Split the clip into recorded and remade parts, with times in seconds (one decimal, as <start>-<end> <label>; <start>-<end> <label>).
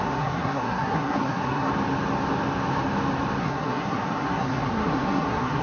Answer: 0.0-1.7 remade; 1.7-3.4 recorded; 3.4-5.6 remade